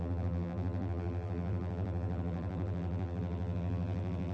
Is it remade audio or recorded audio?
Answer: remade